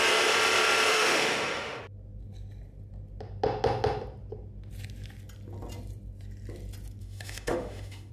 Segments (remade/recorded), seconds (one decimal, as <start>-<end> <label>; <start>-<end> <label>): 0.0-0.9 recorded; 0.9-1.8 remade; 1.8-7.0 recorded; 7.0-8.1 remade